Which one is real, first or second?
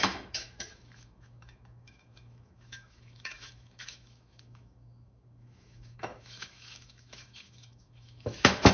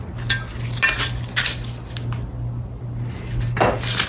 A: second